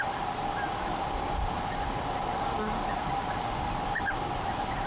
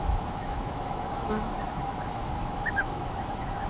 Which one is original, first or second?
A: first